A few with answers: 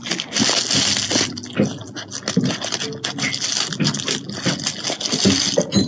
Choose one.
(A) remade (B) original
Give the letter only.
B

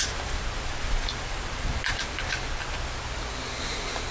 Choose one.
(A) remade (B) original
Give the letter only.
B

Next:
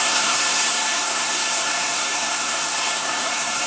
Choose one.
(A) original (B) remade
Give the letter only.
B